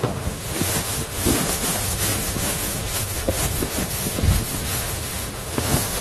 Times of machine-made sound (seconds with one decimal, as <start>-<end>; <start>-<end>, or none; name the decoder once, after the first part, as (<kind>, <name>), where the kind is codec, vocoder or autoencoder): 0.0-6.0 (autoencoder, DAC-VAE)

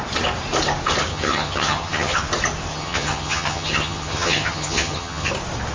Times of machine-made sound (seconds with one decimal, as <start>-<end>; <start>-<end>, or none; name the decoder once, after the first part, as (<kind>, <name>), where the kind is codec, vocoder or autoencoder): 1.1-2.2 (vocoder, HiFi-GAN); 2.7-5.3

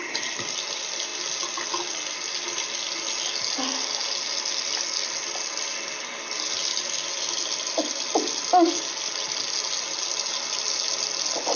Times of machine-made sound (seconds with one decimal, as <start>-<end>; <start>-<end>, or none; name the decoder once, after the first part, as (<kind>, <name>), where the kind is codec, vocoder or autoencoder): none

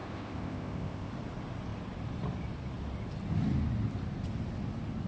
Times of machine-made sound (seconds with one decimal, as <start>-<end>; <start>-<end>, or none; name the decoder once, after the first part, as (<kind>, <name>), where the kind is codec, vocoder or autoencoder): 0.0-1.1 (codec, ZipCodec)

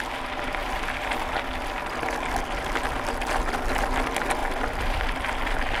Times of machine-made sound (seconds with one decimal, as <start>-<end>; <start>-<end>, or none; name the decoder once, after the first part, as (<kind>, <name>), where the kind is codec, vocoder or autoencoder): none

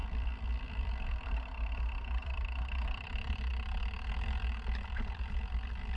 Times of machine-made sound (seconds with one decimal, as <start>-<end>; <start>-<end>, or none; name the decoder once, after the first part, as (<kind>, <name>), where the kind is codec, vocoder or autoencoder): 0.0-3.5 (vocoder, BigVGAN v2); 4.1-6.0

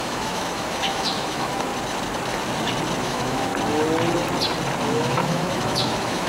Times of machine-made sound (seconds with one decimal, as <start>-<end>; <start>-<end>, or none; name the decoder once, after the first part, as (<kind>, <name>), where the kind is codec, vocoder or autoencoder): 0.0-1.7 (autoencoder, DAC-VAE); 3.0-3.5; 4.9-6.3